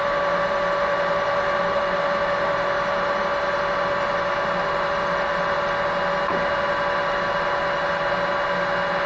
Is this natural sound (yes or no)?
yes